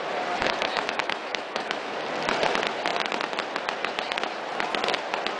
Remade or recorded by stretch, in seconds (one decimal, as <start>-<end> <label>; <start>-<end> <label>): 0.0-0.4 recorded; 0.4-1.9 remade; 1.9-5.4 recorded